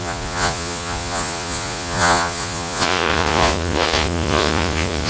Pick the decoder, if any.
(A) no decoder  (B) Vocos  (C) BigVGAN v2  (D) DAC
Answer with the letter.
B